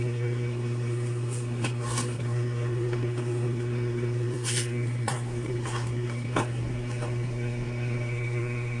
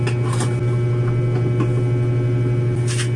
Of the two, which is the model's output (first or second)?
first